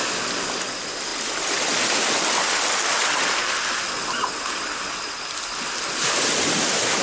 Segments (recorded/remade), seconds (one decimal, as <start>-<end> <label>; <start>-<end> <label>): 0.0-7.0 recorded